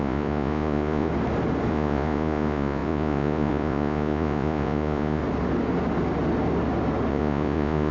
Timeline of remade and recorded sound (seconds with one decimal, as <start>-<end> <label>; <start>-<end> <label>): 0.0-1.1 remade; 1.1-1.7 recorded; 1.7-5.2 remade; 5.2-7.1 recorded; 7.1-7.9 remade